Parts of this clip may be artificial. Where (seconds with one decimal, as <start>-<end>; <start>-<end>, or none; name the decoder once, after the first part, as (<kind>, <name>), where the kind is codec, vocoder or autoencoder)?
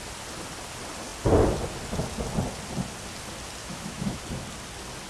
3.6-4.2 (autoencoder, DAC-VAE)